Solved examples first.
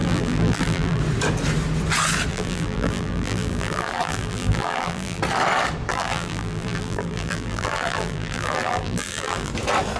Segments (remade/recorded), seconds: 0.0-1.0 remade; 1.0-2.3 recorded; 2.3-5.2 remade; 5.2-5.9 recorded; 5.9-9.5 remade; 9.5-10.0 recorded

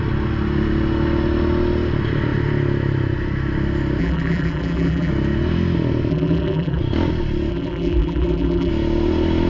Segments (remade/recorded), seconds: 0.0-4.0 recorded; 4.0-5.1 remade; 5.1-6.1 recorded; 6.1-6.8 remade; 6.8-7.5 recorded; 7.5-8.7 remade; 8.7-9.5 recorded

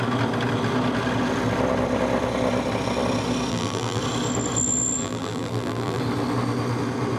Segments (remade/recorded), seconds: 0.0-3.5 recorded; 3.5-4.0 remade; 4.0-5.0 recorded; 5.0-6.0 remade; 6.0-7.2 recorded

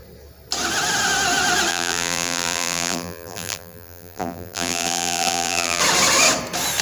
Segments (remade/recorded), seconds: 0.0-1.7 recorded; 1.7-5.8 remade; 5.8-6.8 recorded

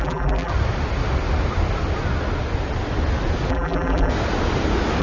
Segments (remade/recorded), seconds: 0.0-0.5 remade; 0.5-3.5 recorded; 3.5-4.1 remade; 4.1-5.0 recorded

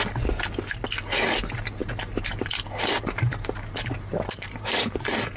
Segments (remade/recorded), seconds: 0.0-1.8 recorded; 1.8-5.0 remade; 5.0-5.4 recorded